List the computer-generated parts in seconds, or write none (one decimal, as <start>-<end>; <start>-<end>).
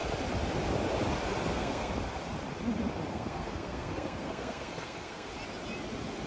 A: 1.5-1.9; 3.1-5.3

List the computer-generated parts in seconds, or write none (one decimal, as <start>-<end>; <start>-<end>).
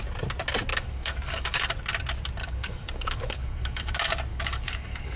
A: 0.7-1.7; 2.4-3.9; 4.3-5.2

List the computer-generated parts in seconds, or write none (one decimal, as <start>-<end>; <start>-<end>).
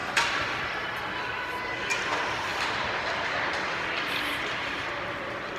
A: 0.0-0.6; 2.5-4.3